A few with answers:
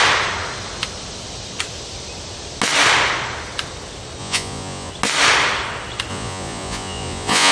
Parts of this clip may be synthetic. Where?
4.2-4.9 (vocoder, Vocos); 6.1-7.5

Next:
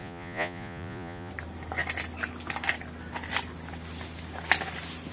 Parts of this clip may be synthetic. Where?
0.0-1.3 (vocoder, Vocos)